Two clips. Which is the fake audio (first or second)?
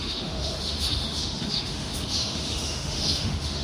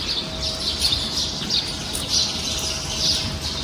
first